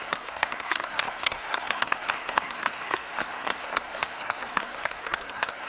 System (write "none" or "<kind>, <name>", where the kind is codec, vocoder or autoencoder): codec, SNAC